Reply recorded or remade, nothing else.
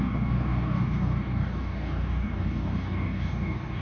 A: remade